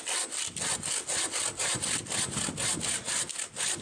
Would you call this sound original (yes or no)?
yes